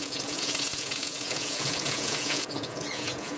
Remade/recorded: remade